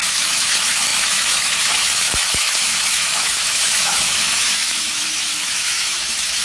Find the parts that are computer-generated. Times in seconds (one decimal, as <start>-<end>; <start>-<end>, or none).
0.0-6.4